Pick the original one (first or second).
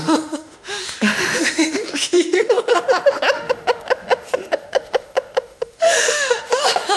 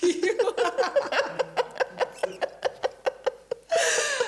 second